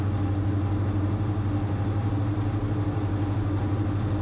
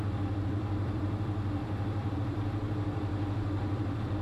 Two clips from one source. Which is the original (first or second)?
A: first